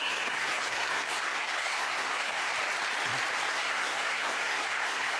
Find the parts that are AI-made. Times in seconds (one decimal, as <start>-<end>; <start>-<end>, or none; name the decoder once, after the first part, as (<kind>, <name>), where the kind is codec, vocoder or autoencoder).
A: 0.0-2.5 (codec, SNAC); 3.5-5.2